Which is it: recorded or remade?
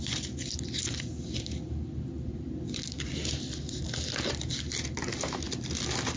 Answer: recorded